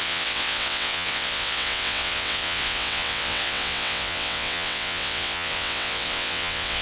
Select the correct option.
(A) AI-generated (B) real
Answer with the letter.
A